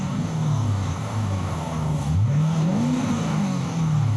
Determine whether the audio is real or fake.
fake